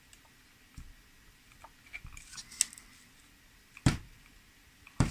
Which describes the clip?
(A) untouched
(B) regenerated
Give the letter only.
A